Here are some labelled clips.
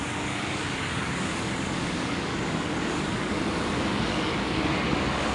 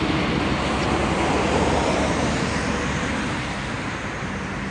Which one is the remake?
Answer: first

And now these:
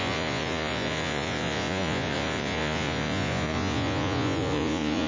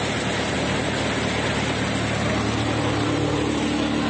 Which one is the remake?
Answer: first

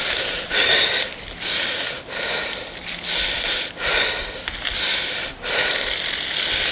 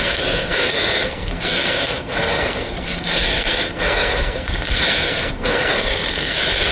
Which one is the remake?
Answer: second